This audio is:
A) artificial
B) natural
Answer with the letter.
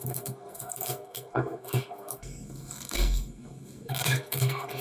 A